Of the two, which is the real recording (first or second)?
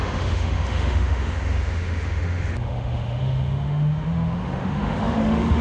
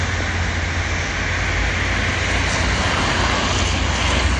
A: second